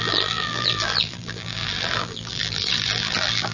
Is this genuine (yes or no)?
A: no